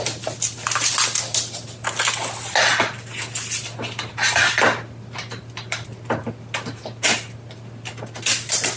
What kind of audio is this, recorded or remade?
recorded